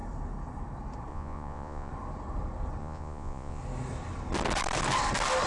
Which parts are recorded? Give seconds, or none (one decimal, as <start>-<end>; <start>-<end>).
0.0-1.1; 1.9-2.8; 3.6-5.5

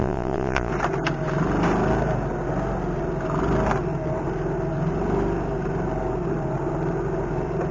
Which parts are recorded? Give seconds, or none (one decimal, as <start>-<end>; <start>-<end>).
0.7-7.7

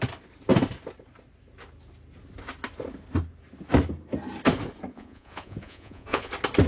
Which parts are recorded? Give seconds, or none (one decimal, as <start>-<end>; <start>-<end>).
0.0-4.9; 6.3-6.7

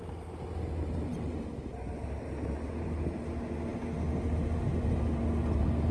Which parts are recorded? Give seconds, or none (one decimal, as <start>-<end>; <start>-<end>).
0.0-5.9

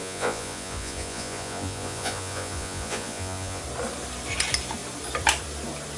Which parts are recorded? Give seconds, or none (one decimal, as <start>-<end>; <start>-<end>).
3.6-6.0